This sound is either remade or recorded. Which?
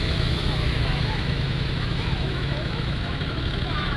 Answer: remade